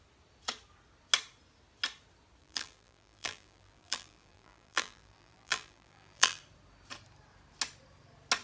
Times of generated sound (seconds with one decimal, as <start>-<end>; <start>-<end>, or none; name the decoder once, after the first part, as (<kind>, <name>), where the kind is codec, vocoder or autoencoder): 2.4-6.4 (vocoder, BigVGAN v2)